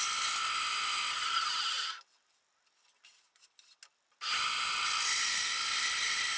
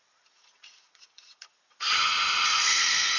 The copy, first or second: second